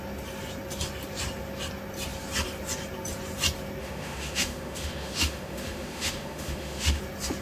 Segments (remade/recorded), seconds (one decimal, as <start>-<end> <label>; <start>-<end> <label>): 0.0-3.8 recorded; 3.8-7.0 remade; 7.0-7.4 recorded